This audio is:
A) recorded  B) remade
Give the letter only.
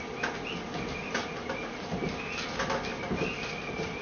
A